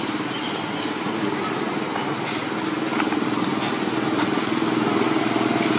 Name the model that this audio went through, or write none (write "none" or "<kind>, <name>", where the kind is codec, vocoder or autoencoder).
none